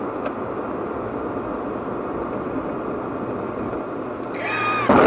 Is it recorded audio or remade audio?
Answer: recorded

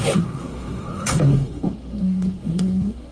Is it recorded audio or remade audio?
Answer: remade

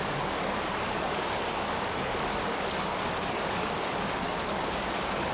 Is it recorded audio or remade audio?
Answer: remade